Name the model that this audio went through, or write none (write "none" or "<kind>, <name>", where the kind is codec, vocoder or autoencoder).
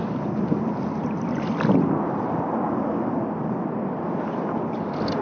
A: none